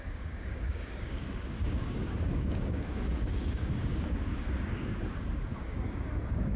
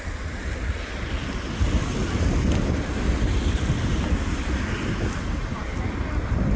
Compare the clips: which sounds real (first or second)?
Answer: second